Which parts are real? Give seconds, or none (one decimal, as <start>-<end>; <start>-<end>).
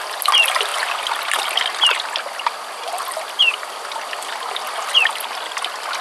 0.0-6.0